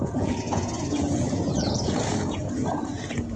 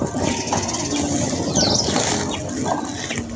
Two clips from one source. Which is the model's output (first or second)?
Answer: first